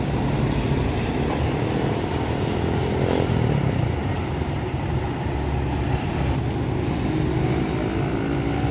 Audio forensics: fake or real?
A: real